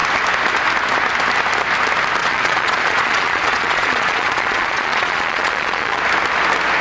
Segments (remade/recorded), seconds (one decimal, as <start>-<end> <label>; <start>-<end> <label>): 0.0-2.2 recorded; 2.2-6.0 remade; 6.0-6.8 recorded